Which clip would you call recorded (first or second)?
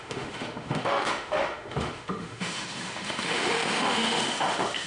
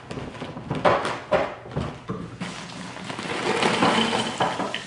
second